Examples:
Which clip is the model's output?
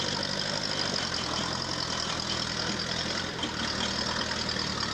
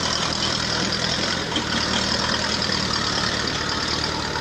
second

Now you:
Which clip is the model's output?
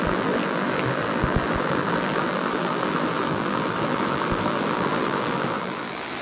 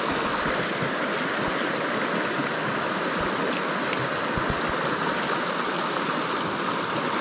first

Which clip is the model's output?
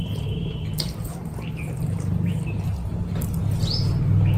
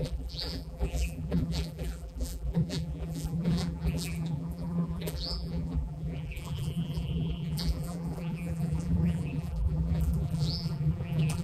second